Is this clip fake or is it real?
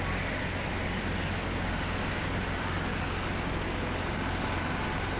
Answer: real